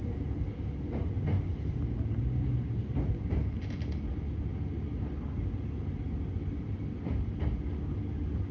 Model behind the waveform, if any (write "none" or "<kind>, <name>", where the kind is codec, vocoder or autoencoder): none